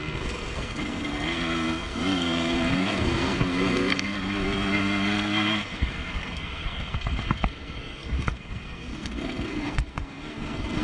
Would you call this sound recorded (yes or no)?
no